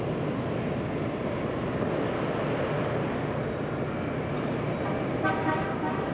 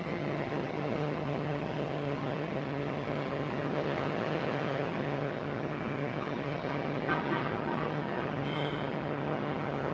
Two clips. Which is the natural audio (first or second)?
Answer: first